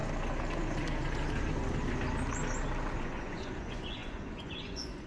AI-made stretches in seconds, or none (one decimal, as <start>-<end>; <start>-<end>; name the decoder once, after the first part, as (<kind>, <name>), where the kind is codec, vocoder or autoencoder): 3.0-5.1 (vocoder, Vocos)